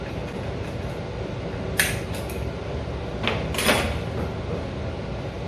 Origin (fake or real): real